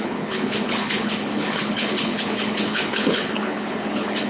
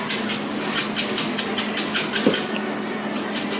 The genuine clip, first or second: second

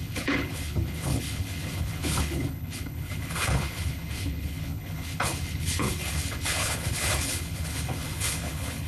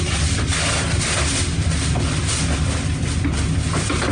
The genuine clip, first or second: second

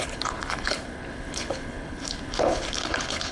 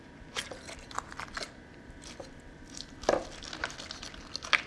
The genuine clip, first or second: second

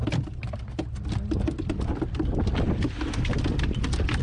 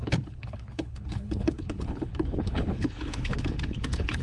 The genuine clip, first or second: first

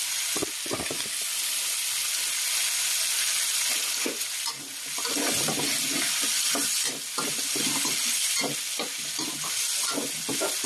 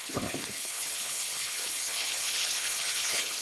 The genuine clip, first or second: first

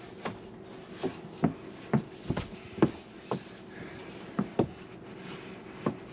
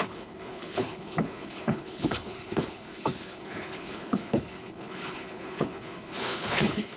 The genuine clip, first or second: first